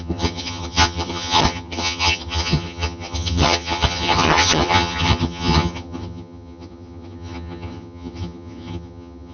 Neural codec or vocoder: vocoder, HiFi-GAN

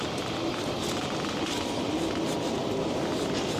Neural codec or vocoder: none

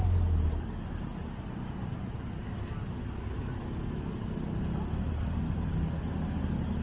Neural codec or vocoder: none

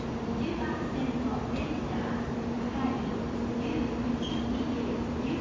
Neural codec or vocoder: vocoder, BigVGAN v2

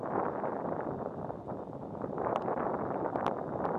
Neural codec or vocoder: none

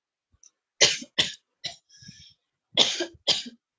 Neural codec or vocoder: none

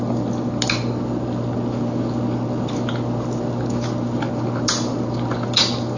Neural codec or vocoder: none